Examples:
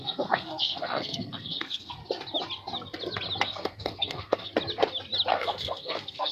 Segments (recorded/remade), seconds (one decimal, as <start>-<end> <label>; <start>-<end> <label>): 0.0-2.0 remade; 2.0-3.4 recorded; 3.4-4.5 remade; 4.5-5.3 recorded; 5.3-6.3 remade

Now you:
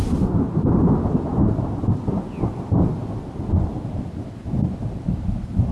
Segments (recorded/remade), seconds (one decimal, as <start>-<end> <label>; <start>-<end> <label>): 0.0-5.7 recorded

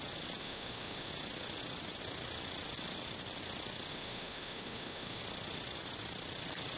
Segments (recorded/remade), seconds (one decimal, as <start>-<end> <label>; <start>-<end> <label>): 0.0-0.4 recorded; 0.4-1.1 remade; 1.1-3.9 recorded; 3.9-5.2 remade; 5.2-6.8 recorded

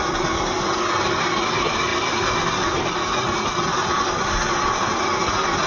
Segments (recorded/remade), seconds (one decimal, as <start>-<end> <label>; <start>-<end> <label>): 0.0-5.7 recorded